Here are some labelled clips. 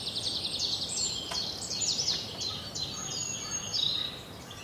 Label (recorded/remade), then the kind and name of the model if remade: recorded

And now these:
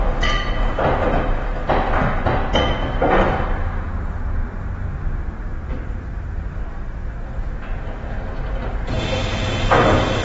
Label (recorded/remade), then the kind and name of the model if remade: recorded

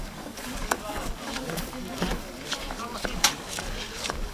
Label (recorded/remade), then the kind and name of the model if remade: remade, codec, DAC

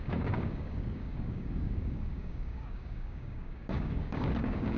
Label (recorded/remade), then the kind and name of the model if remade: remade, codec, DAC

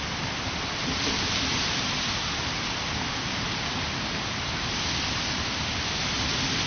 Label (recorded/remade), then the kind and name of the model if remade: recorded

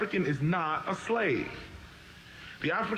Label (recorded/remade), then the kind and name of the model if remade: remade, codec, DAC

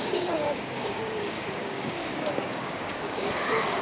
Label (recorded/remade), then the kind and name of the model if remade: remade, codec, DAC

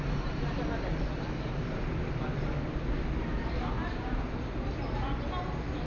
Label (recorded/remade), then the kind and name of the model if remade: recorded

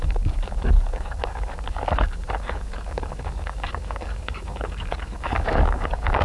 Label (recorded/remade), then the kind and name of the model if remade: remade, codec, DAC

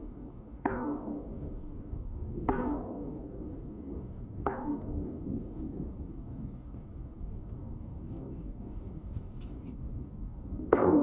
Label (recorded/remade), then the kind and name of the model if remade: remade, codec, DAC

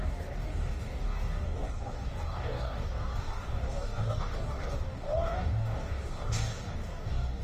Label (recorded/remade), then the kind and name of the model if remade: remade, codec, DAC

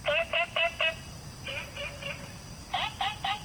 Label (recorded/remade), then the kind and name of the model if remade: recorded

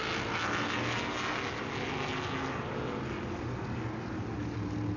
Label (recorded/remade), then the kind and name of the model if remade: recorded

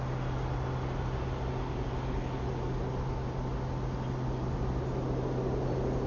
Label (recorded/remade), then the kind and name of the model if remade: recorded